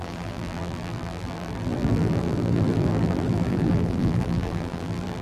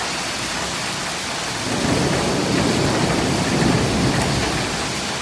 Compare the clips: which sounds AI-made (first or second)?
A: first